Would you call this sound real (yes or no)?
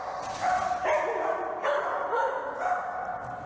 yes